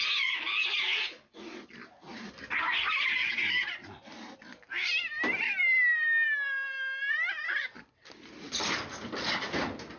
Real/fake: real